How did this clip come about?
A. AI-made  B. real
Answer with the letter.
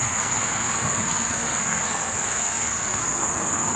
A